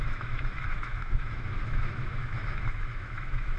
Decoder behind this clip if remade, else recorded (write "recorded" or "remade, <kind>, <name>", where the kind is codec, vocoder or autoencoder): remade, autoencoder, DAC-VAE